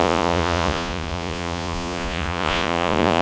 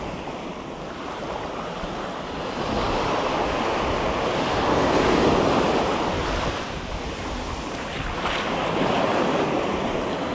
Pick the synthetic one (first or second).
first